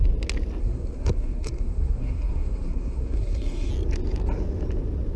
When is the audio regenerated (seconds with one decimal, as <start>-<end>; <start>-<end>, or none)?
0.6-3.7